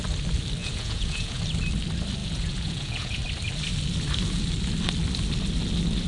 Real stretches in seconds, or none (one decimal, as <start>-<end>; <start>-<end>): 0.0-0.6; 1.4-2.2; 3.2-6.1